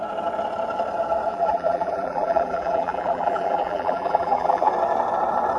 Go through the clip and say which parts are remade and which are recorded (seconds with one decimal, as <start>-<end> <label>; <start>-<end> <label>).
0.0-1.3 recorded; 1.3-4.7 remade; 4.7-5.6 recorded